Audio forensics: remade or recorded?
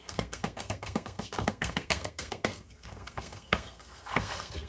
remade